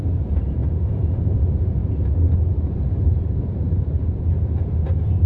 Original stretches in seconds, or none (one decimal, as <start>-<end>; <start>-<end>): 0.6-1.3; 1.8-3.3